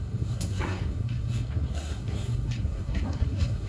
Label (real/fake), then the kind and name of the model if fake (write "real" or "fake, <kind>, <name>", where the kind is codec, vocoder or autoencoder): fake, codec, SNAC